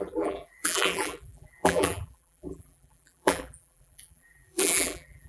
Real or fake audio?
fake